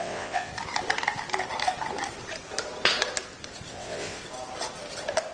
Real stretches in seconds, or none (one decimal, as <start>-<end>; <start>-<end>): 0.5-3.7; 4.2-5.3